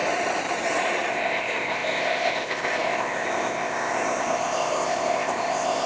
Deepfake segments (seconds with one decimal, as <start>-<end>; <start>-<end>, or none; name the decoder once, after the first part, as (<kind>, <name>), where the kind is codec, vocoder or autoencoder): 1.1-5.9 (codec, ZipCodec)

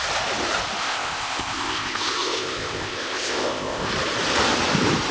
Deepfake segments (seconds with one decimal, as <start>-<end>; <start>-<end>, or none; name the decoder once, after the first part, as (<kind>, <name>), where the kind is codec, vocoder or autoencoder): 0.8-3.9 (codec, ZipCodec)

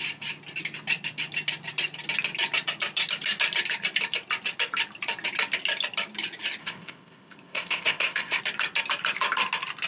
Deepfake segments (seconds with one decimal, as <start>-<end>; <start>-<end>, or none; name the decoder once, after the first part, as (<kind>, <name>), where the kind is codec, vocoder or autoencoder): 6.6-8.4 (codec, ZipCodec)

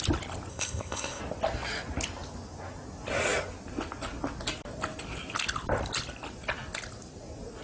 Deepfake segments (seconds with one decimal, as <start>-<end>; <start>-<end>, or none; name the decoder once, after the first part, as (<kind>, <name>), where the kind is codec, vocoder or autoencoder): 0.5-1.2 (codec, ZipCodec)

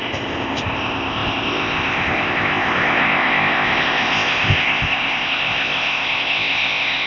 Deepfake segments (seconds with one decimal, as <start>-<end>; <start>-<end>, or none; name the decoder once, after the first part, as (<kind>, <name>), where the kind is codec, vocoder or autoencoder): 0.0-7.1 (codec, ZipCodec)